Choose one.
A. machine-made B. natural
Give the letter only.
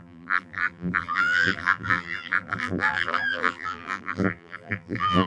A